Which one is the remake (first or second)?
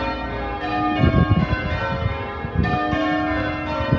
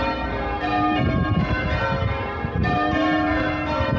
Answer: second